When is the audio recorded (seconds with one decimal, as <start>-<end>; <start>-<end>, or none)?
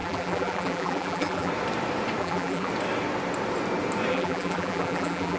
1.5-2.2; 2.7-4.1